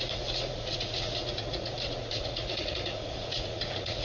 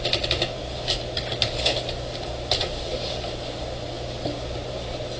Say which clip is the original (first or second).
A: second